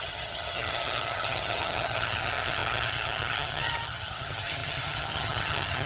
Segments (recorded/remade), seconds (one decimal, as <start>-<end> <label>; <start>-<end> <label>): 0.0-5.9 remade